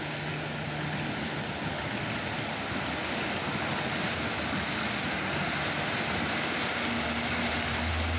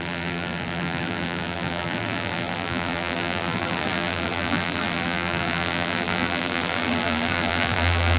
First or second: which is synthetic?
second